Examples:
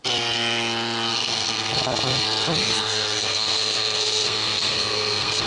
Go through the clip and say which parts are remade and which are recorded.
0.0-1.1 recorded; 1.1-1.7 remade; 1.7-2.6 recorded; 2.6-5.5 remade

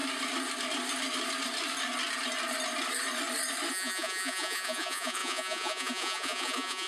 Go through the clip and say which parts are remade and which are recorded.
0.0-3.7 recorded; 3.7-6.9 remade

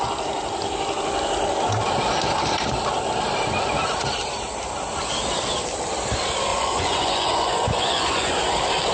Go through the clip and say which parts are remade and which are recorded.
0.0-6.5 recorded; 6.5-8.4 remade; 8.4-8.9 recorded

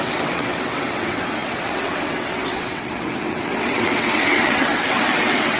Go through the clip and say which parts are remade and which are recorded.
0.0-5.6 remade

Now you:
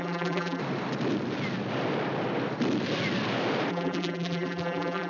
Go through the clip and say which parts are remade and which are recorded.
0.0-0.6 remade; 0.6-3.7 recorded; 3.7-5.1 remade

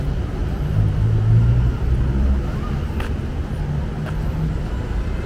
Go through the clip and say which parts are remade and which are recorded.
0.0-5.3 recorded

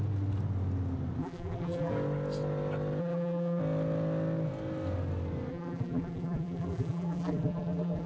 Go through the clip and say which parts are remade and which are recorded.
0.0-1.2 recorded; 1.2-1.9 remade; 1.9-3.0 recorded; 3.0-3.6 remade; 3.6-5.5 recorded; 5.5-8.1 remade

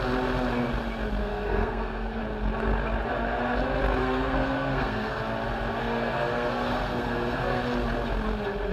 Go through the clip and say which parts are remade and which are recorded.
0.0-1.2 recorded; 1.2-2.2 remade; 2.2-4.0 recorded; 4.0-5.2 remade; 5.2-5.8 recorded; 5.8-7.6 remade; 7.6-8.7 recorded